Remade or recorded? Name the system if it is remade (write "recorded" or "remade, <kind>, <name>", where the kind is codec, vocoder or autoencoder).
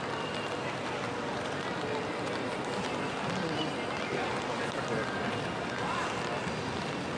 recorded